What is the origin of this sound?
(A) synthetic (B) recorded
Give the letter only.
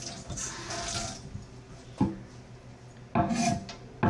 B